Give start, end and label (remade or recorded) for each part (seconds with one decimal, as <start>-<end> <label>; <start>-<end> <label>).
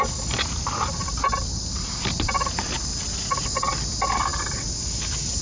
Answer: 0.0-5.4 recorded